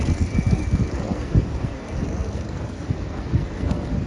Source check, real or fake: fake